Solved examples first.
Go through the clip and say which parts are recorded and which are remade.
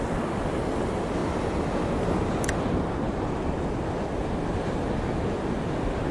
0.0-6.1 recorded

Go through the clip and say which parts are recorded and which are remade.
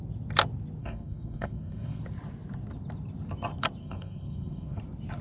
0.0-0.8 recorded; 0.8-2.0 remade; 2.0-3.8 recorded; 3.8-4.8 remade; 4.8-5.2 recorded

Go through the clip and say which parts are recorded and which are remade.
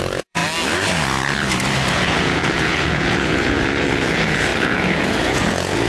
0.0-0.4 remade; 0.4-1.9 recorded; 1.9-5.9 remade